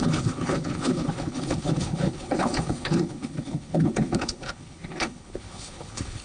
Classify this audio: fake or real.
fake